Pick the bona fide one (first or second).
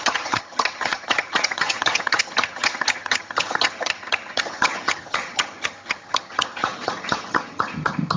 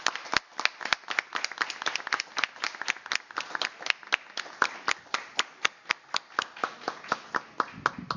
second